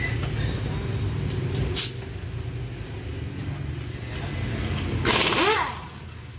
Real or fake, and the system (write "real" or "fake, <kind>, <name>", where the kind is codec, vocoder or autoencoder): real